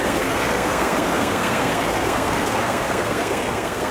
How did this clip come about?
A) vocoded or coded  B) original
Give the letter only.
A